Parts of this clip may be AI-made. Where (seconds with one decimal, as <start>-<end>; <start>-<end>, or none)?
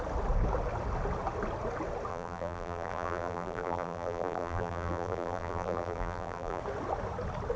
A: 2.1-6.6